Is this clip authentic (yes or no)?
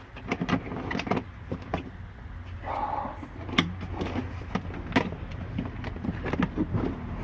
yes